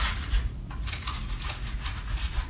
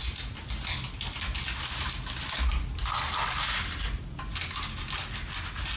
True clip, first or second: second